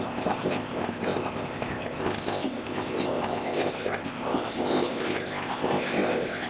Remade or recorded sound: remade